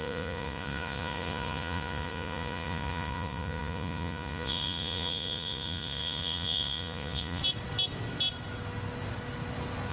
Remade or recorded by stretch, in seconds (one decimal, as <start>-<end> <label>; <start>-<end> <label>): 0.0-7.4 remade; 7.4-9.9 recorded

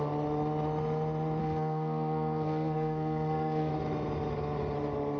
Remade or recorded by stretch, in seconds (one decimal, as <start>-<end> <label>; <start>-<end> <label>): 0.0-1.4 recorded; 1.4-3.7 remade; 3.7-5.2 recorded

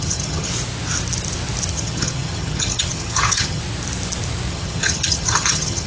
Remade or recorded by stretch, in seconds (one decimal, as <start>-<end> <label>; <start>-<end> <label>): 0.0-0.5 remade; 0.5-1.7 recorded; 1.7-3.6 remade; 3.6-4.5 recorded; 4.5-5.9 remade

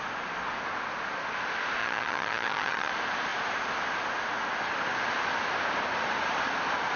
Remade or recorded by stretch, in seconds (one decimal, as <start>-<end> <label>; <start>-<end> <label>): 0.0-1.8 recorded; 1.8-2.9 remade; 2.9-7.0 recorded

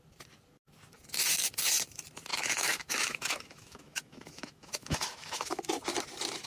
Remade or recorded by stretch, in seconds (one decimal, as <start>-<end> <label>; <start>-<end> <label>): 0.0-2.3 recorded; 2.3-5.6 remade; 5.6-6.5 recorded

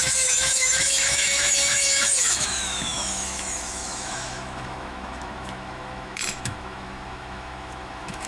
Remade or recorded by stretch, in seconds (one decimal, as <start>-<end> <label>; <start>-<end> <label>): 0.0-8.3 remade